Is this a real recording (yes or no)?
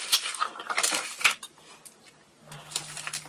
yes